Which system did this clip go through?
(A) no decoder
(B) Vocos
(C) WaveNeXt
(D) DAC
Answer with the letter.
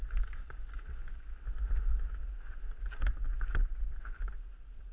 A